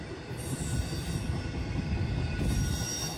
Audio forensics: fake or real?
real